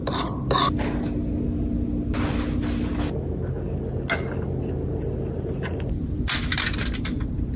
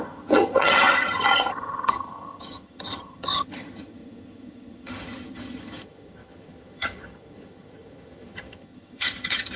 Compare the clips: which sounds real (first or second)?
first